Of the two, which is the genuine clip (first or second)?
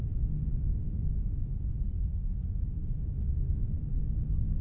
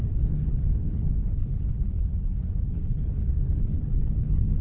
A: first